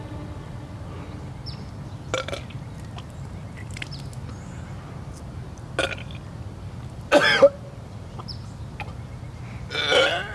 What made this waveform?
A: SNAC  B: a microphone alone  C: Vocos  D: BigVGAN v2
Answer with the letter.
B